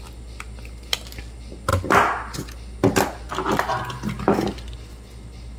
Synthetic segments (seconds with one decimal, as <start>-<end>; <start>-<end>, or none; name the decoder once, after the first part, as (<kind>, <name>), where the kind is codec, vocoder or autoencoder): none